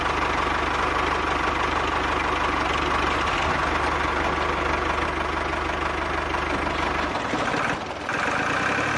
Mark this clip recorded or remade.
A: recorded